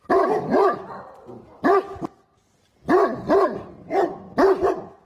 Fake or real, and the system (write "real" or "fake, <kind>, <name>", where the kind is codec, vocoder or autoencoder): fake, vocoder, BigVGAN v2